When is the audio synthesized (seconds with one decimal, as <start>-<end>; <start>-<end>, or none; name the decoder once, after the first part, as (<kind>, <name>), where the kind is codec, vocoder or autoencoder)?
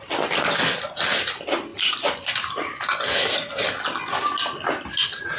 none